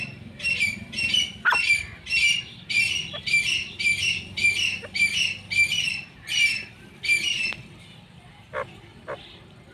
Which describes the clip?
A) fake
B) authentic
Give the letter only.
A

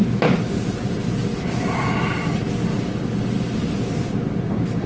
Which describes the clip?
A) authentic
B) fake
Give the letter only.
B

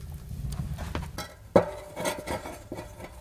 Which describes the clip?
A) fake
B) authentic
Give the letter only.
B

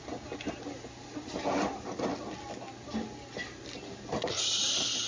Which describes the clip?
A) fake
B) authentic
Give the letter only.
B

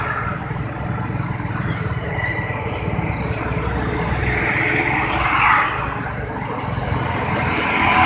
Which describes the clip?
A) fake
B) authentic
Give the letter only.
B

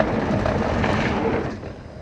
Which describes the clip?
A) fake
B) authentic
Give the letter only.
B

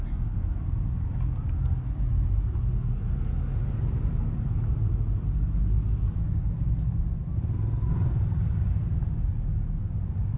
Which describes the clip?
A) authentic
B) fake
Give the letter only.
A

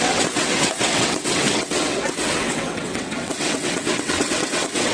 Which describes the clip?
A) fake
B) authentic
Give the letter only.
A